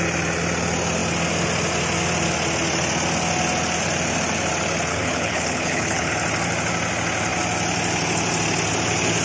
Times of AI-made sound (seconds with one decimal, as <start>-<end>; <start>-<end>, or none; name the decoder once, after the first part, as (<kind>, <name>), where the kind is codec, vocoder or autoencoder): 4.9-6.1 (codec, HILCodec)